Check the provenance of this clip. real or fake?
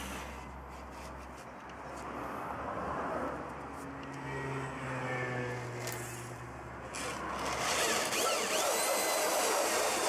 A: real